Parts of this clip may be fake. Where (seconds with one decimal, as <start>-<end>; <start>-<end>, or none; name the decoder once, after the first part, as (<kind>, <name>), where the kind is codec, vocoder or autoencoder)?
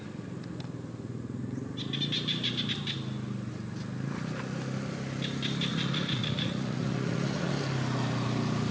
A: 5.7-7.5 (vocoder, Vocos)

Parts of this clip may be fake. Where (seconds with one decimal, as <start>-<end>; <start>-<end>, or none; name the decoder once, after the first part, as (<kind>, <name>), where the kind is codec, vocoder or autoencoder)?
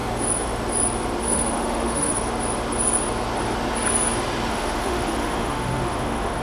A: 1.2-2.1 (autoencoder, DAC-VAE); 4.5-6.4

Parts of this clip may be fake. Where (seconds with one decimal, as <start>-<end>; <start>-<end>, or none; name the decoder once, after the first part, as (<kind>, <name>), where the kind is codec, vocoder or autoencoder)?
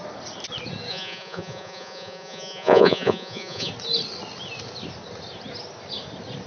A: 0.9-3.7 (vocoder, Vocos)